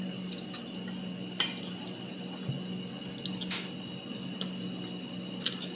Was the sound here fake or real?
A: real